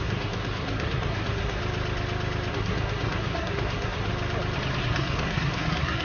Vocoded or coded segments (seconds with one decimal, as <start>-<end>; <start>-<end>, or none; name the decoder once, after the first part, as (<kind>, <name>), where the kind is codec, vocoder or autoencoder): 0.0-1.6 (codec, SNAC); 2.5-4.1; 4.8-6.0